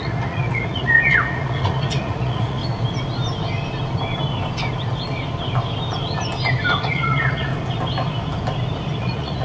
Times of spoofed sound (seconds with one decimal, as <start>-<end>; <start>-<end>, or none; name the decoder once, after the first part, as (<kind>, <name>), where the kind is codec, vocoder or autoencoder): 0.0-2.6 (vocoder, Vocos); 6.8-7.5; 9.0-9.4